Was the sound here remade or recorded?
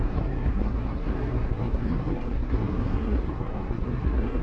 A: remade